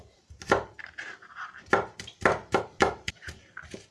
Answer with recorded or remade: remade